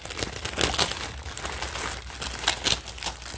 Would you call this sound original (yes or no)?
yes